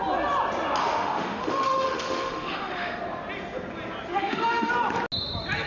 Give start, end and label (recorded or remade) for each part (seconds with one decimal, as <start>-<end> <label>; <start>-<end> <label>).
0.0-0.8 recorded; 0.8-3.0 remade; 3.0-4.1 recorded; 4.1-4.7 remade; 4.7-5.7 recorded